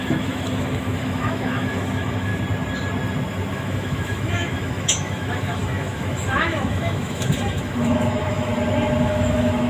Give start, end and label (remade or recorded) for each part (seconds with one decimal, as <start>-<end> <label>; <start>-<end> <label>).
0.0-2.3 remade; 2.3-3.5 recorded; 3.5-8.5 remade; 8.5-9.0 recorded; 9.0-9.7 remade